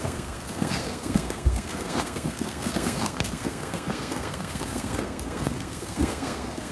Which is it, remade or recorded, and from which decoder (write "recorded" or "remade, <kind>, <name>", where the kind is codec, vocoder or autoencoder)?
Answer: remade, codec, SNAC